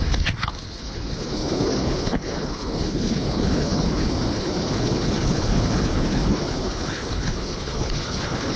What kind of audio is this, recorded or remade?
remade